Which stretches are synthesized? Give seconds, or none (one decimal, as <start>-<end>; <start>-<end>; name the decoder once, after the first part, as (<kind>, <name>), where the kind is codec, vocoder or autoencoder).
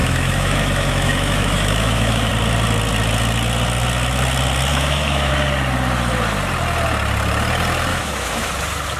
0.0-2.3 (autoencoder, DAC-VAE); 4.7-5.3; 7.9-8.5